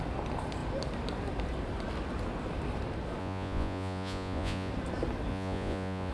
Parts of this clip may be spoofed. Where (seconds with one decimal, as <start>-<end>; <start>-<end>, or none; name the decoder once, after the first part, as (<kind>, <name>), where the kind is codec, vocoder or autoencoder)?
3.2-4.7 (vocoder, Vocos); 5.3-6.1